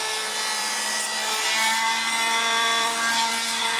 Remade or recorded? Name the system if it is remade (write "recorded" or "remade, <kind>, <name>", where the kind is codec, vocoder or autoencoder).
remade, vocoder, BigVGAN v2